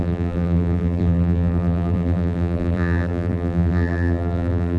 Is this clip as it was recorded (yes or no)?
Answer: no